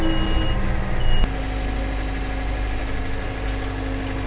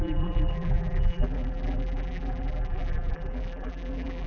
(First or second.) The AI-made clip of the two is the second